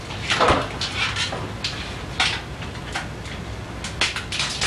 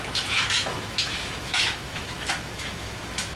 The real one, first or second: first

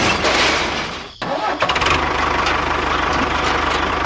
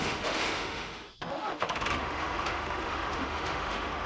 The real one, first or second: first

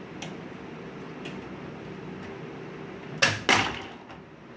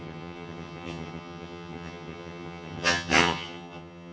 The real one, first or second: first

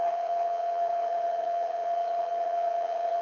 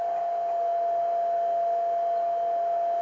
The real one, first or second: second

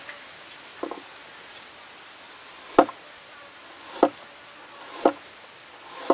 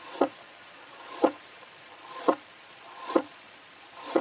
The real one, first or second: first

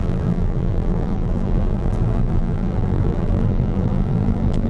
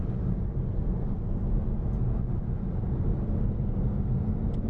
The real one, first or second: second